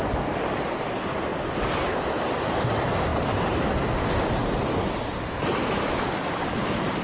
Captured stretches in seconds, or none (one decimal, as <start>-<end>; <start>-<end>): 0.0-7.0